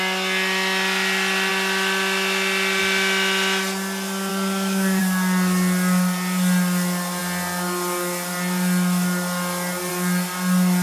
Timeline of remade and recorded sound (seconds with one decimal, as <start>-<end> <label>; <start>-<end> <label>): 0.0-4.3 recorded; 4.3-5.0 remade; 5.0-10.8 recorded